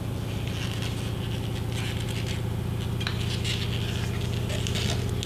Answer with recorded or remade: recorded